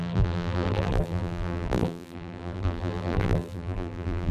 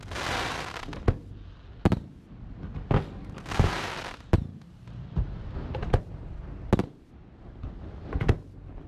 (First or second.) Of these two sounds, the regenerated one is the first